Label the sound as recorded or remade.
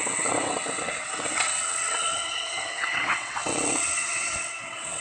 remade